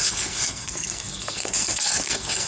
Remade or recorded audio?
remade